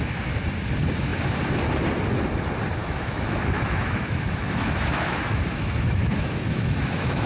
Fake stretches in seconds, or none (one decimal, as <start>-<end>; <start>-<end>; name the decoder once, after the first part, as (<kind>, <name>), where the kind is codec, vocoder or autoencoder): 2.8-7.3 (autoencoder, DAC-VAE)